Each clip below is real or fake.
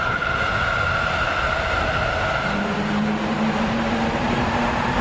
real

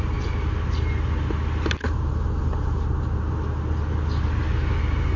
real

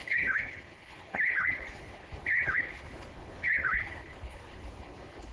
fake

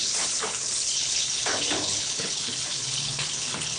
fake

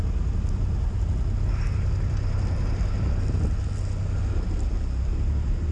real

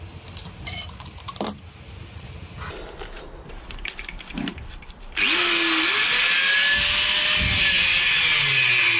real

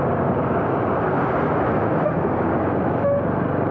real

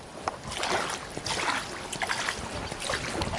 real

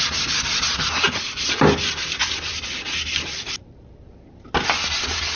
real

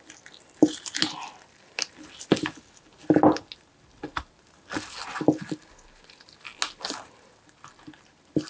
real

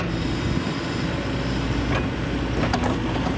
real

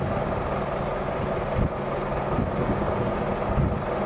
real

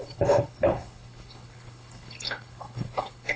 fake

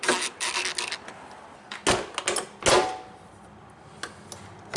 real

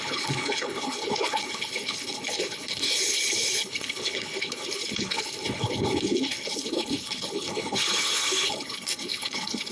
fake